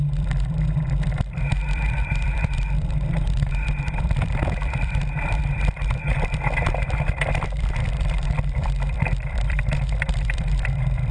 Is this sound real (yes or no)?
no